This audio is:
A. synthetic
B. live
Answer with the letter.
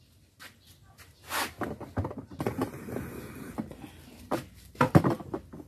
B